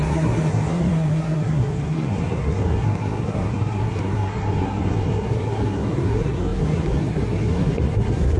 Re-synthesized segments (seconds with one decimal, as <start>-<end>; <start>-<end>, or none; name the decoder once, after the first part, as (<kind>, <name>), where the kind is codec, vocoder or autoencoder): 0.0-8.4 (codec, SNAC)